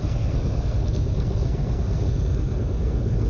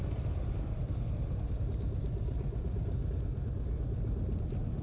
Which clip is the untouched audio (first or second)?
second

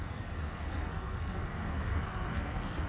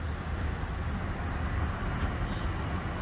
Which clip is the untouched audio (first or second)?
second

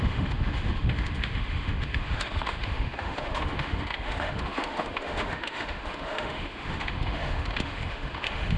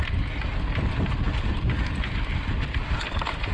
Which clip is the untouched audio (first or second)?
second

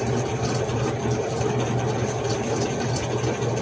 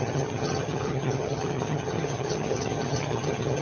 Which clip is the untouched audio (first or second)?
first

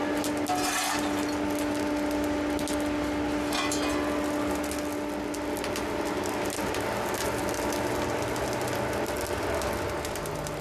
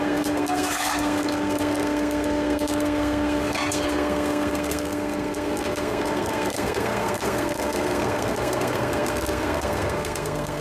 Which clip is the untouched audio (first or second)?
first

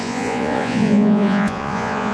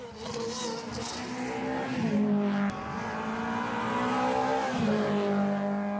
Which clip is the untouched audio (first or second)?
second